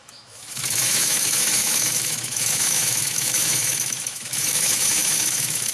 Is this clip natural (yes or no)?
no